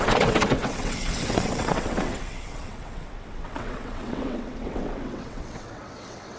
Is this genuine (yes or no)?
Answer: no